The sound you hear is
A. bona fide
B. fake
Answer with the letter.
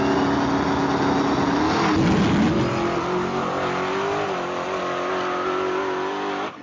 A